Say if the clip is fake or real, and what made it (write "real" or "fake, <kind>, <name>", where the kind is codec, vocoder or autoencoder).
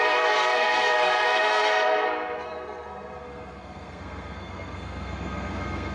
fake, codec, SNAC